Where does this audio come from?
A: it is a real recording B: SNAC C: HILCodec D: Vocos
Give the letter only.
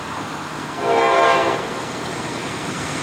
B